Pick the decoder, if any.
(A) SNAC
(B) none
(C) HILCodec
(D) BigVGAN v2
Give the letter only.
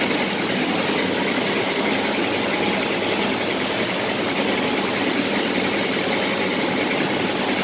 B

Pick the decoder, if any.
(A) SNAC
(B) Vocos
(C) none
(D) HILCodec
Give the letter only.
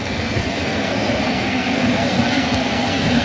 A